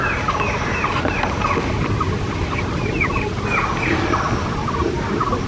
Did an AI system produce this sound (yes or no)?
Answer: no